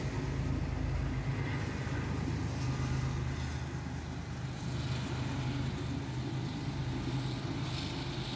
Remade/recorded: recorded